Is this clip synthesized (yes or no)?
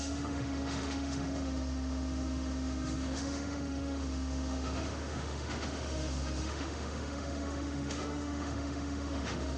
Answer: yes